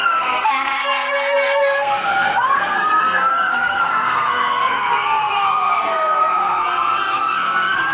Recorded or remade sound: remade